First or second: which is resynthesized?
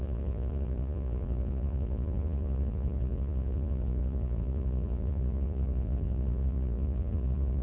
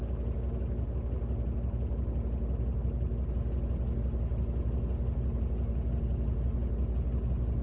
first